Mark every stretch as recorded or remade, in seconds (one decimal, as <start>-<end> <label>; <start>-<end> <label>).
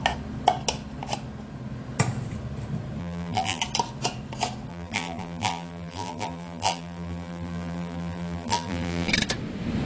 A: 0.0-3.0 recorded; 3.0-3.6 remade; 3.6-4.7 recorded; 4.7-9.1 remade; 9.1-9.9 recorded